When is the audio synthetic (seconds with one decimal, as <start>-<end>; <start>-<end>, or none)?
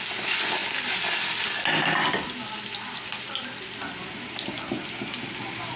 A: none